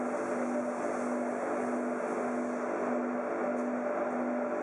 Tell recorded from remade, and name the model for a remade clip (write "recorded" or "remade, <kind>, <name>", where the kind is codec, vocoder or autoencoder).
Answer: recorded